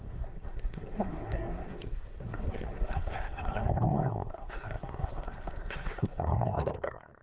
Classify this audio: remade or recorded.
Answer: remade